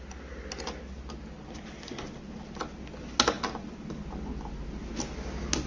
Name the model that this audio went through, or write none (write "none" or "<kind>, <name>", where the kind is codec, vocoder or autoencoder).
none